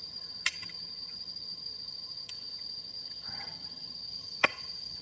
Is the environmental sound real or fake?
fake